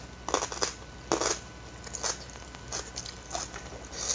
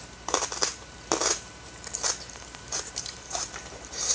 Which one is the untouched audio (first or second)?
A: first